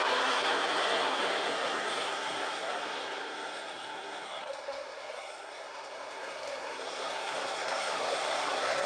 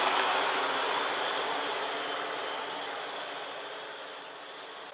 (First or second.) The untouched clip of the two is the second